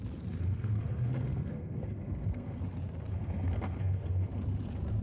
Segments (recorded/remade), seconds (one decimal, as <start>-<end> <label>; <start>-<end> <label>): 0.0-0.4 recorded; 0.4-2.6 remade; 2.6-3.1 recorded; 3.1-4.4 remade; 4.4-5.0 recorded